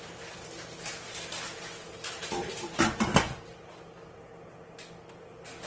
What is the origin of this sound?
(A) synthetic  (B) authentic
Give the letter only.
B